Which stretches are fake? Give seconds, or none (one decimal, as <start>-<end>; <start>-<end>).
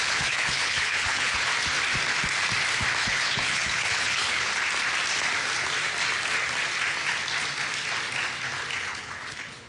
0.0-1.5; 3.0-4.5; 8.8-9.7